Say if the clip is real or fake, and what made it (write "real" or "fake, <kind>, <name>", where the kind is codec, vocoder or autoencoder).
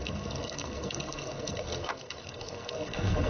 fake, codec, SNAC